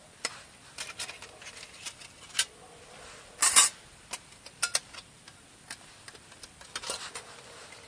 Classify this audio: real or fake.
real